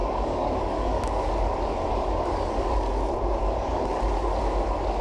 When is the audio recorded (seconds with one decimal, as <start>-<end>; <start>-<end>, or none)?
1.3-1.9; 2.7-3.4; 4.0-5.0